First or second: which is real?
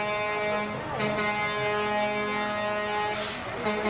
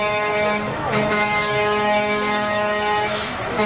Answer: first